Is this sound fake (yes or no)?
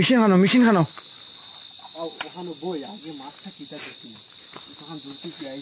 no